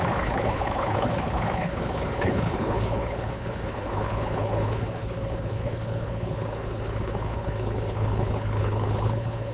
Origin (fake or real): fake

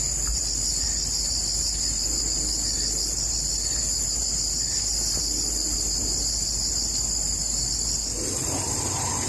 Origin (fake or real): real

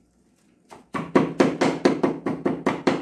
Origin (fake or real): real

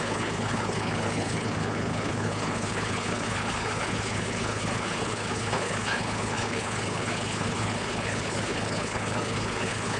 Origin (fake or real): fake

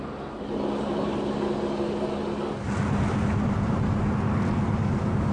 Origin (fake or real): real